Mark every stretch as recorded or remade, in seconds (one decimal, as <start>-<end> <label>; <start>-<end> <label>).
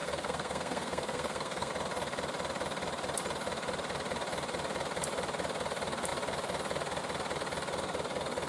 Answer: 0.0-1.7 remade; 1.7-8.5 recorded